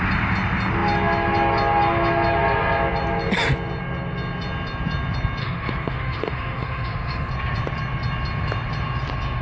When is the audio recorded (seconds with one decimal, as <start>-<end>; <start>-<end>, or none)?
0.0-5.4; 7.3-9.4